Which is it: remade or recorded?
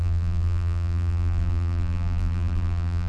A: remade